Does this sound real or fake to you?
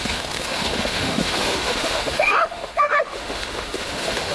fake